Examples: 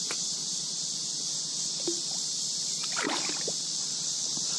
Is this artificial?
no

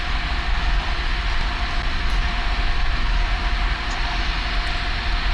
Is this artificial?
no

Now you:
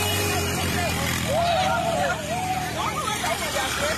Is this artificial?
no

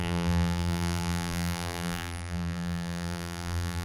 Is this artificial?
yes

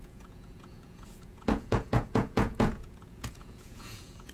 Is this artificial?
yes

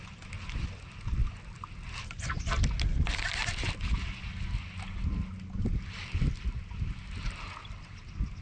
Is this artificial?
no